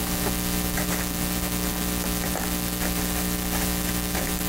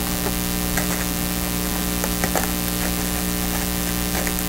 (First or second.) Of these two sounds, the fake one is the first